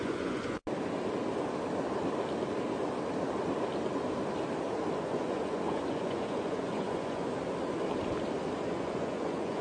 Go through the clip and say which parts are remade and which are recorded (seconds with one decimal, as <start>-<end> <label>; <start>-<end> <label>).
0.0-0.6 remade; 0.6-5.0 recorded; 5.0-7.3 remade; 7.3-8.7 recorded; 8.7-9.6 remade